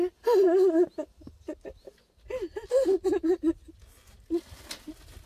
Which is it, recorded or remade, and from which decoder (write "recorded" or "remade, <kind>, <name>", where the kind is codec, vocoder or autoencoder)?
recorded